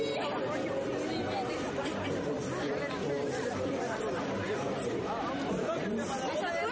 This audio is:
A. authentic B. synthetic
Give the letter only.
A